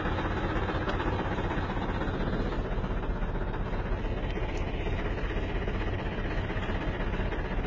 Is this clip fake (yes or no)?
no